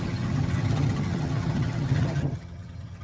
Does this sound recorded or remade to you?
remade